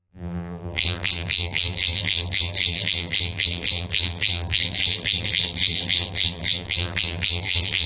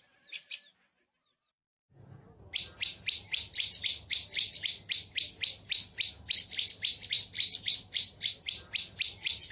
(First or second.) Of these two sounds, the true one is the second